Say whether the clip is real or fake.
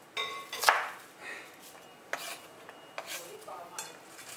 real